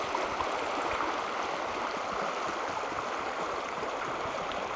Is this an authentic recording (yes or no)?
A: yes